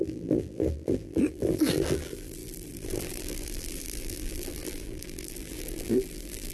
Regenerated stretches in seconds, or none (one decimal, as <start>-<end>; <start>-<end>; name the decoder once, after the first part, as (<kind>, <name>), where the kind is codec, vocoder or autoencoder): 0.0-6.5 (vocoder, BigVGAN v2)